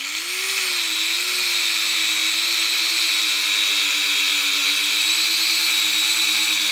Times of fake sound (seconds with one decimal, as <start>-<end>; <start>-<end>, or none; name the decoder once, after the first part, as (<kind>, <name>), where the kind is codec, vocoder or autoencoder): none